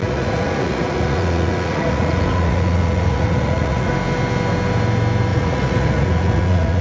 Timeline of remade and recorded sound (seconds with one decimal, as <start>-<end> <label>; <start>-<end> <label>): 0.0-3.9 remade; 3.9-5.3 recorded; 5.3-6.8 remade